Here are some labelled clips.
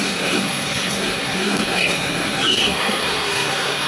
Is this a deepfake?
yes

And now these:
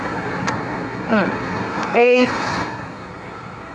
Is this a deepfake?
yes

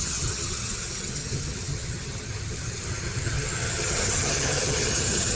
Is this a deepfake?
yes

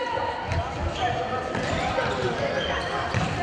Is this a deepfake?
no